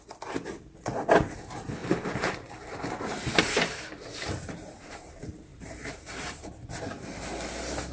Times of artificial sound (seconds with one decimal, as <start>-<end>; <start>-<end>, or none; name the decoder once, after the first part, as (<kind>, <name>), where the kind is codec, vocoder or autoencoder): 1.8-5.1 (vocoder, BigVGAN v2); 5.5-6.5